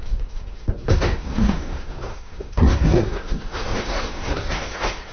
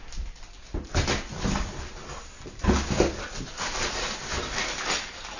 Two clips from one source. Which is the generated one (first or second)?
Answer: first